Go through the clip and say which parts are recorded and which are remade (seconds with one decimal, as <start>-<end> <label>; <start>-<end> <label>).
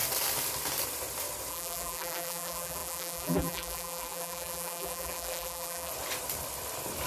0.0-1.5 recorded; 1.5-5.9 remade; 5.9-7.1 recorded